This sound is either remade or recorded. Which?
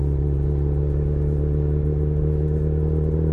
recorded